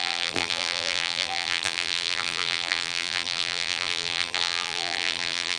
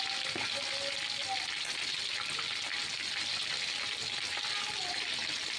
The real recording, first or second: second